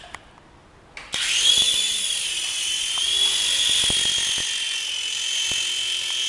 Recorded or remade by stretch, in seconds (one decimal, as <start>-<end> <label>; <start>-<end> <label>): 0.0-0.6 recorded; 0.6-2.9 remade; 2.9-6.3 recorded

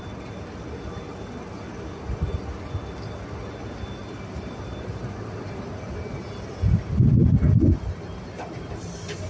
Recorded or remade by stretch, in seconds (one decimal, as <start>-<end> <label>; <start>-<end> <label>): 0.0-4.0 recorded; 4.0-5.3 remade; 5.3-9.3 recorded